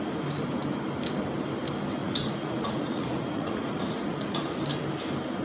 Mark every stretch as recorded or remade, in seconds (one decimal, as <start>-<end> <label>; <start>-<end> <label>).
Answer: 0.0-2.0 recorded; 2.0-4.6 remade; 4.6-5.4 recorded